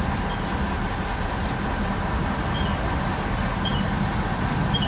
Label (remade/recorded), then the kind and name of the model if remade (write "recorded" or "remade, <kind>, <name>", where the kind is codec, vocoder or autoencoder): recorded